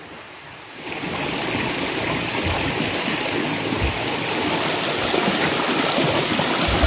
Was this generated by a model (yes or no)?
no